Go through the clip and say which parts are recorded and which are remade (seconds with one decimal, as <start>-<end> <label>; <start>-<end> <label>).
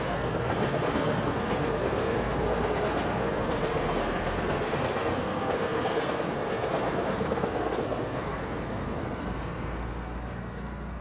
0.0-11.0 remade